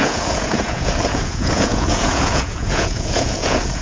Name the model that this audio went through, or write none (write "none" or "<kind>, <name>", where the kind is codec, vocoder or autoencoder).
vocoder, Vocos